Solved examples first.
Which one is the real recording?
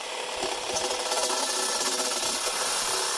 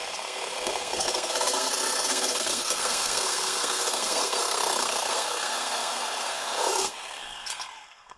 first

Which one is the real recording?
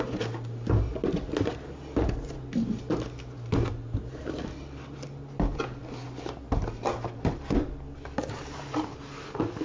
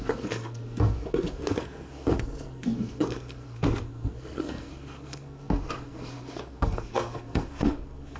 first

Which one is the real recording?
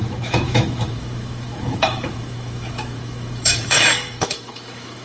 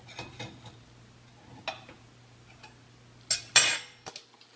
second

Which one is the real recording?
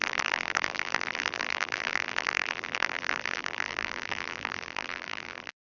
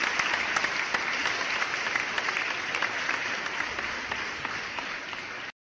second